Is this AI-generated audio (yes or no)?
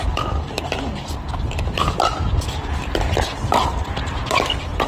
no